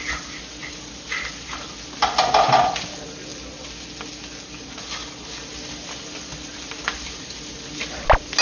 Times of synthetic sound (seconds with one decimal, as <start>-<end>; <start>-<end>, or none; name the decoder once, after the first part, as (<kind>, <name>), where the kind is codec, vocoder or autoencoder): none